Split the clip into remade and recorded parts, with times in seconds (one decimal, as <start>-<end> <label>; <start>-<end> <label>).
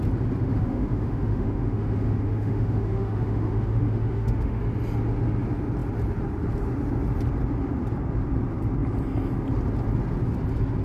0.0-0.5 recorded; 0.5-4.6 remade; 4.6-10.8 recorded